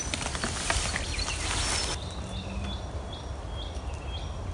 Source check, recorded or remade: recorded